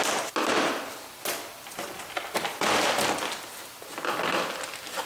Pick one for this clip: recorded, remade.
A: recorded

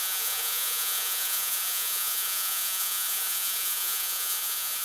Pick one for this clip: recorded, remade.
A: remade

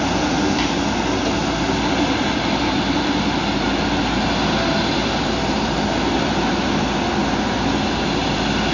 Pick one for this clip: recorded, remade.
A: recorded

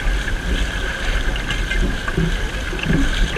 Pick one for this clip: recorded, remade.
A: recorded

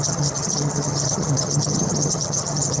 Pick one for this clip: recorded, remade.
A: remade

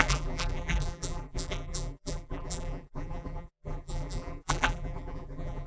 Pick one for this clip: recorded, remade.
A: remade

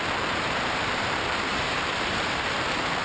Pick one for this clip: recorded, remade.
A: remade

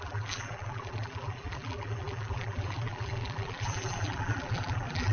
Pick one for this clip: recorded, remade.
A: remade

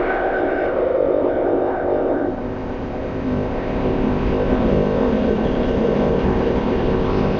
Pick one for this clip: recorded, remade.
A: remade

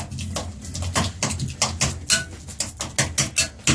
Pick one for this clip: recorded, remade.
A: recorded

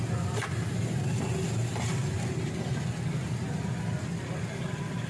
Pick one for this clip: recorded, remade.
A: recorded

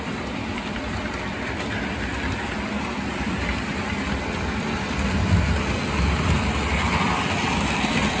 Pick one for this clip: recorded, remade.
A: recorded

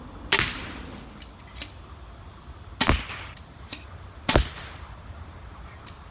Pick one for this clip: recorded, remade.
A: recorded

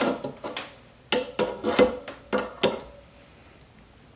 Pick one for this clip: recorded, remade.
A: recorded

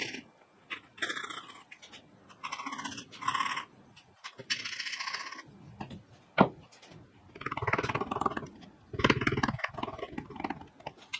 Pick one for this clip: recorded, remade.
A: recorded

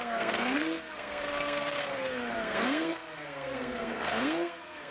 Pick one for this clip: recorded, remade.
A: remade